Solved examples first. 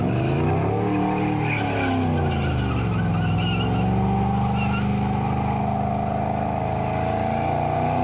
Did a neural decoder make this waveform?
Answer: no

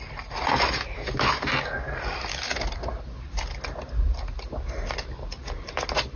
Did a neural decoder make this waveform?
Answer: no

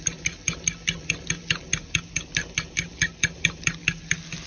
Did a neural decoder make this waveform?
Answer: no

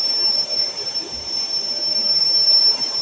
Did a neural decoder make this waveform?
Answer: yes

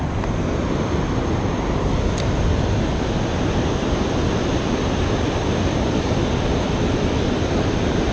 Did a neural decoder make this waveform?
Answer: no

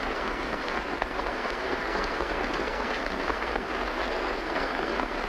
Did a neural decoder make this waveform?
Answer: yes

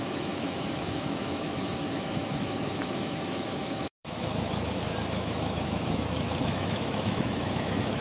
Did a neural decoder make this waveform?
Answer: yes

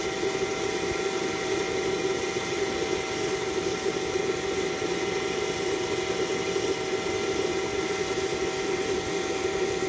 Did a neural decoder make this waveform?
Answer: no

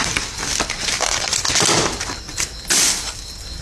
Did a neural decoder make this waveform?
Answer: no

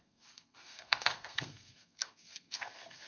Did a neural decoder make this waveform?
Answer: yes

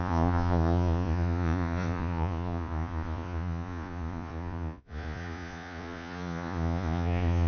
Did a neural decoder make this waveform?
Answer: yes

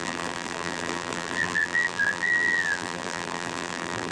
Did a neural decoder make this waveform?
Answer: yes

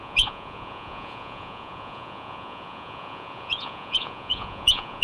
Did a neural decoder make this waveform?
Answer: yes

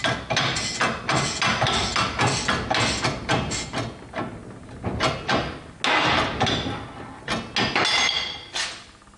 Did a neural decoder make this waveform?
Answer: no